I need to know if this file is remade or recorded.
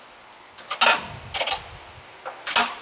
recorded